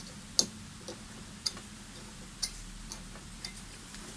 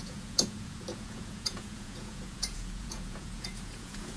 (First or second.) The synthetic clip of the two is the second